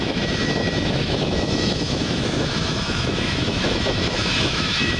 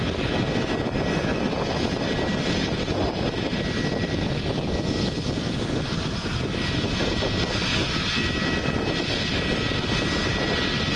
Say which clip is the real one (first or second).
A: second